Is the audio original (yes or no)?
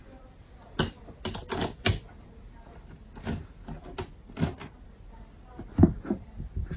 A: yes